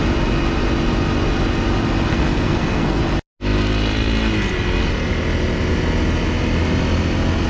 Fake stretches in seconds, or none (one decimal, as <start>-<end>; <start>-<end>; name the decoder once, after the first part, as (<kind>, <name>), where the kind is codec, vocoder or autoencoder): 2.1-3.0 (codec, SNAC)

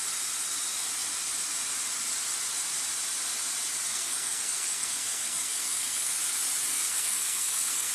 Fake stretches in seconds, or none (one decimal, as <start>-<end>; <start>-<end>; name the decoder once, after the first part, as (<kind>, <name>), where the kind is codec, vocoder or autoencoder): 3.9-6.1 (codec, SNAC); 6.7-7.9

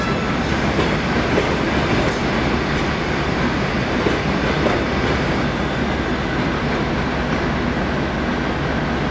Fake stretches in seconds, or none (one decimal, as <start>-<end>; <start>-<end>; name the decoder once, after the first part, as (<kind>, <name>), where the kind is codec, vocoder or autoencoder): none

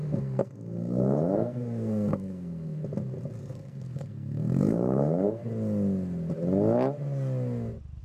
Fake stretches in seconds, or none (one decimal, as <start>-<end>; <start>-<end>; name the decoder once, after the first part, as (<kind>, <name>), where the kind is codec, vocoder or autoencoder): 0.0-2.8 (codec, SNAC); 3.4-5.4

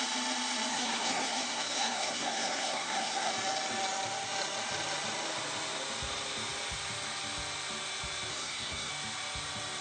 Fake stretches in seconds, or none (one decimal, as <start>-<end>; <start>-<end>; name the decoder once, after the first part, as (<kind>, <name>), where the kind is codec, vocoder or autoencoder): 0.7-3.3 (codec, SNAC); 8.3-8.9

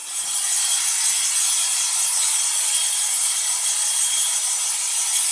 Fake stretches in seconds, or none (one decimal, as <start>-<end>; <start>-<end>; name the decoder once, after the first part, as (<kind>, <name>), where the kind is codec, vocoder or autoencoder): none